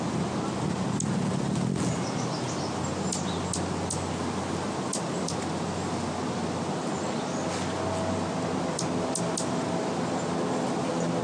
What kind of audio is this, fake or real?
real